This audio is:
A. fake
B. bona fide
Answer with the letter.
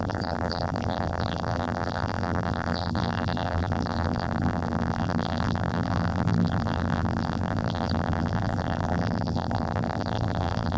A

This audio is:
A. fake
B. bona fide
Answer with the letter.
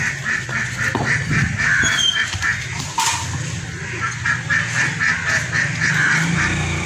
B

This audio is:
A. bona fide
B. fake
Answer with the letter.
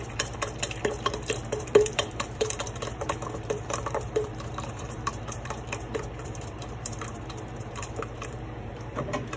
B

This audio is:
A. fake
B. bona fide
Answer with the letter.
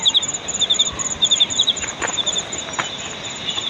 B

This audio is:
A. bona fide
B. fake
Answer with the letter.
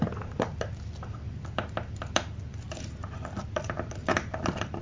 B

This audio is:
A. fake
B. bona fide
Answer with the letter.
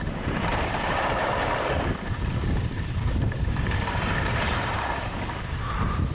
A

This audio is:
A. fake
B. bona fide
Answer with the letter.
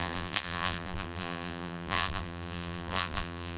A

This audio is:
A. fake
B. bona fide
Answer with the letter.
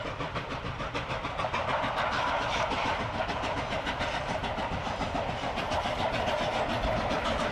B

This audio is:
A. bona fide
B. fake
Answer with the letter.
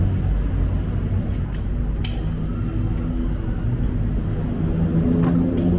A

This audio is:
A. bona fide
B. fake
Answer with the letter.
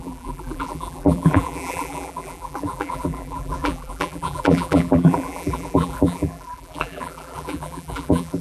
B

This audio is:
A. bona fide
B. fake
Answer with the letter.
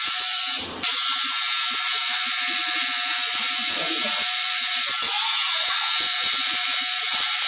B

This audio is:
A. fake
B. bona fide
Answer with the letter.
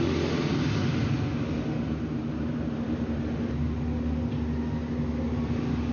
B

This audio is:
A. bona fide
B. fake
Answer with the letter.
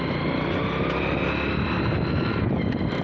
A